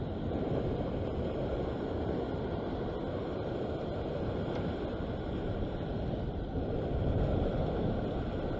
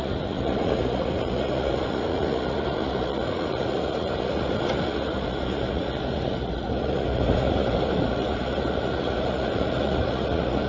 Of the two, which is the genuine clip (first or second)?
first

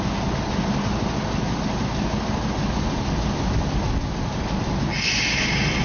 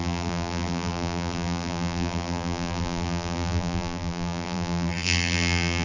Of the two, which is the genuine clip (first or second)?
first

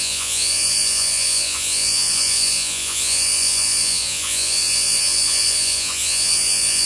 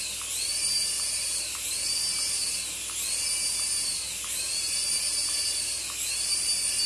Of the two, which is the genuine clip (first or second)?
second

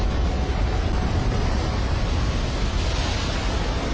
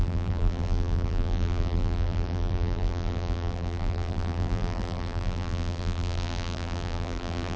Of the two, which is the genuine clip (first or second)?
first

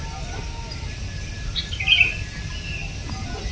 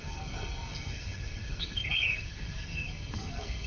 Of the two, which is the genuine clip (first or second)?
first